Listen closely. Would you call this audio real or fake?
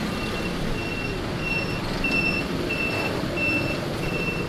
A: real